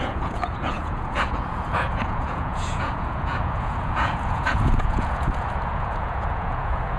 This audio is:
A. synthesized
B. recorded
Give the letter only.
A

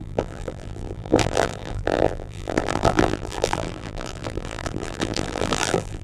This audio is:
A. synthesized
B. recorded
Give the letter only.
A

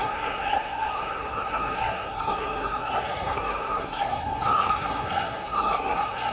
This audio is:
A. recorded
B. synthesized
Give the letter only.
B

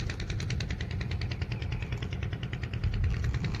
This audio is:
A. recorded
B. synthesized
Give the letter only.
A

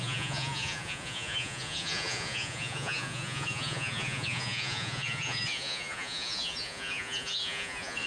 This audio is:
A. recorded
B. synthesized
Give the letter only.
B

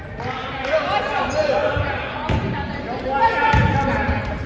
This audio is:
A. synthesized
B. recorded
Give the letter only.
B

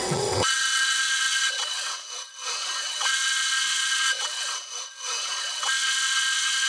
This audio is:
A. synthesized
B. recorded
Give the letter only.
A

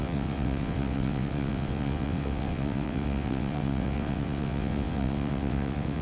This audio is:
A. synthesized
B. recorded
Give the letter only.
A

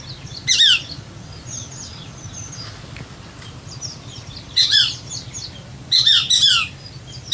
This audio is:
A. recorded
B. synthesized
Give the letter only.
A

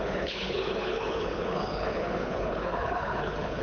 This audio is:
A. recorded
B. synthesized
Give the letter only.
B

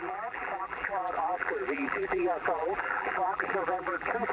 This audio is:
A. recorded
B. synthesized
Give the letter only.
B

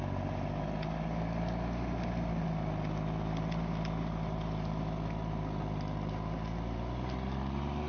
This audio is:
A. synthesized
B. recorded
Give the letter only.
B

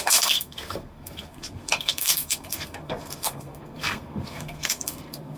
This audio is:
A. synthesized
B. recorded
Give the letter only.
A